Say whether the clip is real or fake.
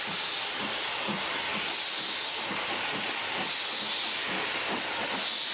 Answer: real